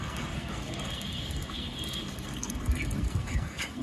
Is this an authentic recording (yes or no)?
no